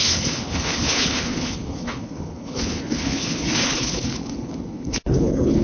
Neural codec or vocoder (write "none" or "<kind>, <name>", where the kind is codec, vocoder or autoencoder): codec, HILCodec